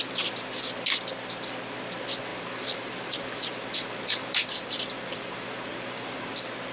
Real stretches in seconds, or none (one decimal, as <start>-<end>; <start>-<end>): 0.0-2.3; 6.3-6.7